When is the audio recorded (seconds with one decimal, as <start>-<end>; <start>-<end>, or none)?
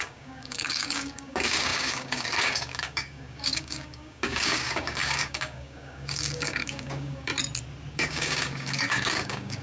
7.3-7.9